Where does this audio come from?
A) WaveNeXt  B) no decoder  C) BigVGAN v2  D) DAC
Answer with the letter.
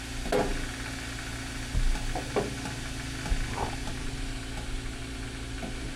B